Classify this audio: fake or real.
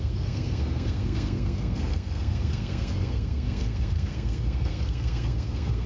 fake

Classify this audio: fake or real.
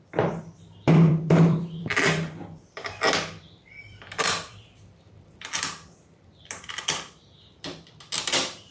fake